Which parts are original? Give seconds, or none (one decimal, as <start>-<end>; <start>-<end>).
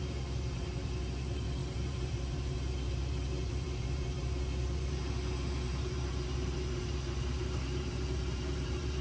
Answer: 5.0-5.5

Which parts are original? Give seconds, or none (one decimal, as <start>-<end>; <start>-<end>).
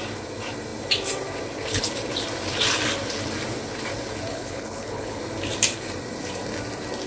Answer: 0.0-4.3; 5.2-7.1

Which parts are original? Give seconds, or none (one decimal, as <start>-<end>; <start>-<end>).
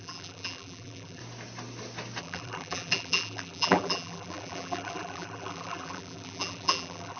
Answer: 1.2-2.2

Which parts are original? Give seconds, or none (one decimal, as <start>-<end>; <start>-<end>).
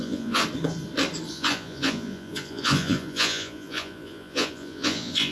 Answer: 0.4-1.3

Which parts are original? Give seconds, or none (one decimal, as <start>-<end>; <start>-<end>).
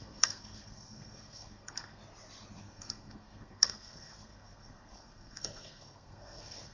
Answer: 2.0-2.6